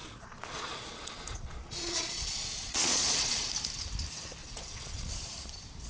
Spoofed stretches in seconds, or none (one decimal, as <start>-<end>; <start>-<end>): 0.0-3.5; 4.4-5.1